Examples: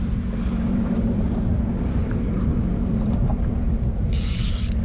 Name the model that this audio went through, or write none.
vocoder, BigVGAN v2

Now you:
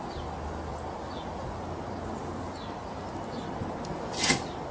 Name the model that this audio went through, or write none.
none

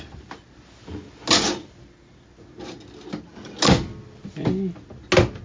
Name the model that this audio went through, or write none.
none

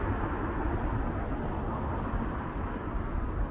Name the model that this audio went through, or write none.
none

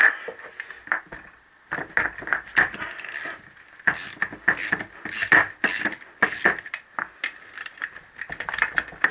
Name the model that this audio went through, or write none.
none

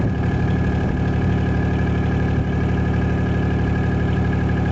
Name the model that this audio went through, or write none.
vocoder, BigVGAN v2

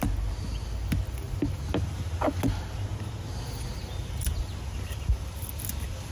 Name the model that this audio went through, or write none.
none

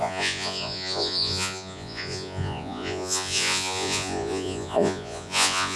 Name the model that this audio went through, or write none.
vocoder, Vocos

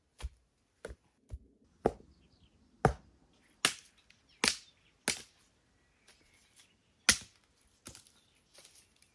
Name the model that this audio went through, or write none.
none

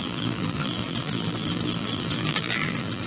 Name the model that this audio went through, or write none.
vocoder, BigVGAN v2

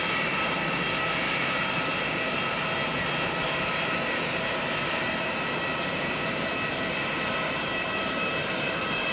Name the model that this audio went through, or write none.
vocoder, BigVGAN v2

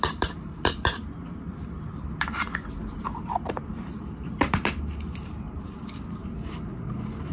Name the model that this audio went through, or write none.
vocoder, BigVGAN v2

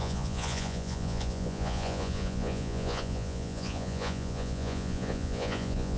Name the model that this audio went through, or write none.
vocoder, Vocos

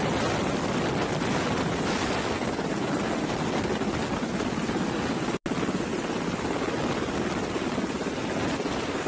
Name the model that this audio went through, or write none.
none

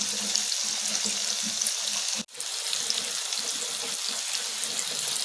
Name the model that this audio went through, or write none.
none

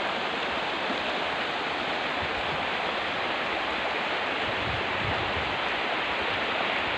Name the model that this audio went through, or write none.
none